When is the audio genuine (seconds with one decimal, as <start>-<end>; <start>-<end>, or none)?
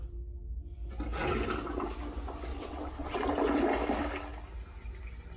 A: 0.0-2.5; 3.2-5.4